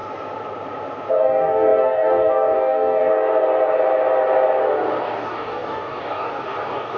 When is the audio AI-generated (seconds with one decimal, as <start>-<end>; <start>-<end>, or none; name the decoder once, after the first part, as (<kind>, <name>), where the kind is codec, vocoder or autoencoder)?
1.1-3.1 (codec, DAC); 5.0-7.0